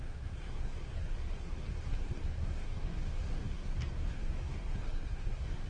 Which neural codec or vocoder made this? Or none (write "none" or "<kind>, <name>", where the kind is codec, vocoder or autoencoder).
codec, SNAC